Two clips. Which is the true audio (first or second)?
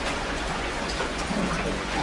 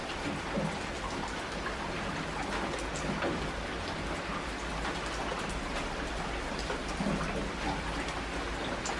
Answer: second